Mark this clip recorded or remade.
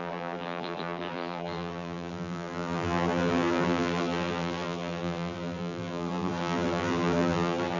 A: remade